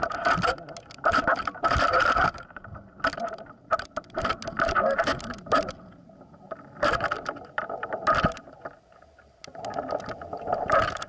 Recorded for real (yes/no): yes